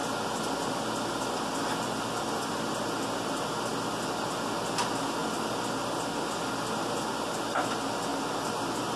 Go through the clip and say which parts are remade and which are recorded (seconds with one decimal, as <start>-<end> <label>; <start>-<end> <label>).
0.0-9.0 recorded